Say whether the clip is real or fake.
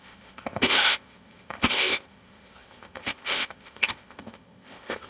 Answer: fake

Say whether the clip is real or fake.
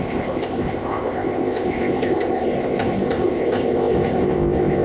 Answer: fake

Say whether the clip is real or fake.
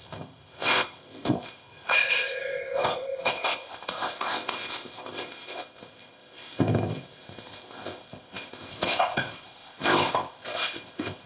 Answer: fake